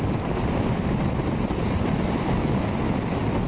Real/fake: real